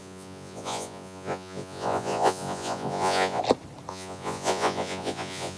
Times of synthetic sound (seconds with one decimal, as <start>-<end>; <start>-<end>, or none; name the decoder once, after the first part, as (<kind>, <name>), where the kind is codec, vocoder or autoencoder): 0.0-3.4 (vocoder, Vocos); 3.9-5.6